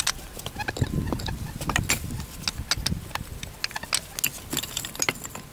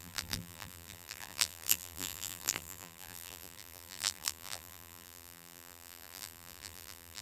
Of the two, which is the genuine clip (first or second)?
first